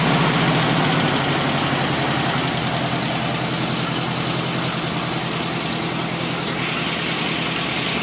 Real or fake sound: real